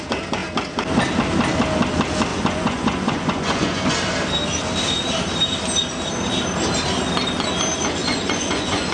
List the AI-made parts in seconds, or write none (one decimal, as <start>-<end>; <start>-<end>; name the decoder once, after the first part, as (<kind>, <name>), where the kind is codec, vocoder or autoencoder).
2.3-3.9 (vocoder, Vocos); 8.0-8.9